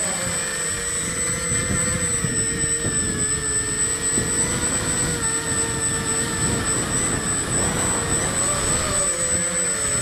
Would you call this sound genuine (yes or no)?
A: yes